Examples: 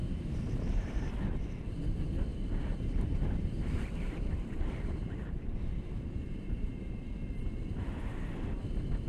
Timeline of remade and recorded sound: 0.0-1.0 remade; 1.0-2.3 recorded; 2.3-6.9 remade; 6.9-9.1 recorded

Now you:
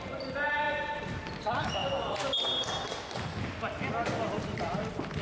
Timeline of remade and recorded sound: 0.0-5.2 recorded

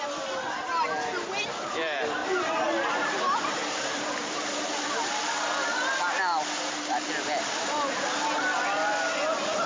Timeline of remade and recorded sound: 0.0-2.2 recorded; 2.2-4.6 remade; 4.6-9.7 recorded

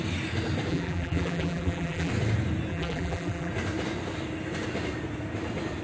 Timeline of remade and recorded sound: 0.0-0.7 recorded; 0.7-2.1 remade; 2.1-2.7 recorded; 2.7-3.5 remade; 3.5-5.8 recorded

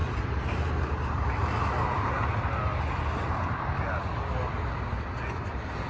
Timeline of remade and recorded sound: 0.0-2.6 remade; 2.6-5.9 recorded

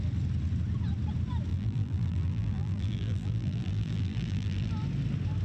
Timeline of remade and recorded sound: 0.0-1.5 recorded; 1.5-4.7 remade; 4.7-5.4 recorded

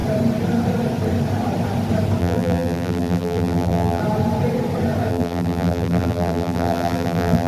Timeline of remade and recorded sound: 0.0-2.2 recorded; 2.2-4.0 remade; 4.0-5.1 recorded; 5.1-7.5 remade

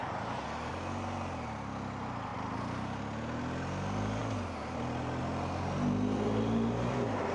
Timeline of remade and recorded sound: 0.0-7.3 recorded